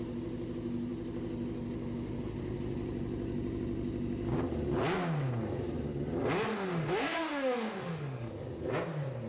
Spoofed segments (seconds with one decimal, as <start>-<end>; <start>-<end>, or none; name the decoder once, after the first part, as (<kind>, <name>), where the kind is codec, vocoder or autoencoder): 6.5-8.3 (autoencoder, DAC-VAE)